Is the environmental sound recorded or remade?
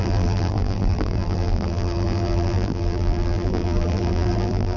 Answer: remade